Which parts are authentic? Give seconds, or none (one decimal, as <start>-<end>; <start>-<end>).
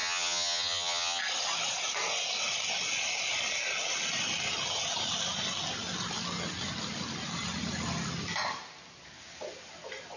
1.2-10.2